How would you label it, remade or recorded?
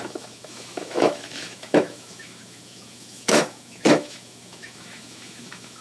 remade